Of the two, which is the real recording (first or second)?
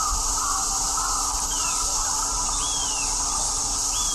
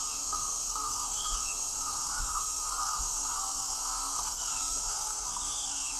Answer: first